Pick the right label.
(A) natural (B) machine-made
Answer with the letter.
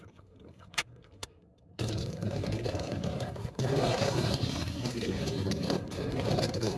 B